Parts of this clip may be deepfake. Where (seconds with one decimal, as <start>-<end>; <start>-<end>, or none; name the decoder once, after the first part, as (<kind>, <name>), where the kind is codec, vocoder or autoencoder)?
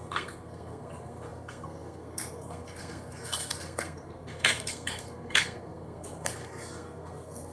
0.0-7.5 (codec, SNAC)